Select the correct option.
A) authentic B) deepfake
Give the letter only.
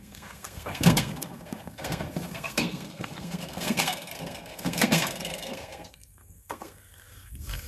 B